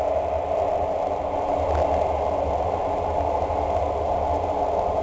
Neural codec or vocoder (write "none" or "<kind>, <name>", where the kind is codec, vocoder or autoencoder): none